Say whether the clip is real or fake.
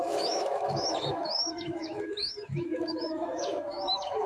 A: fake